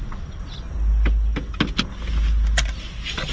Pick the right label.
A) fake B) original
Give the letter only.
B